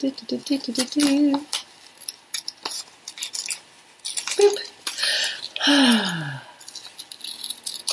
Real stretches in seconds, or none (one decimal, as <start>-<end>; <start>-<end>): 0.0-7.9